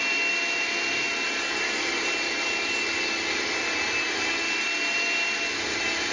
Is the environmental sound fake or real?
real